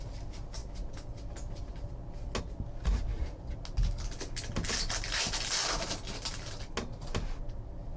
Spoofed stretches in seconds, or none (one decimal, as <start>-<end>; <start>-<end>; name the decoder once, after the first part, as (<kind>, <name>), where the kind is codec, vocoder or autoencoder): none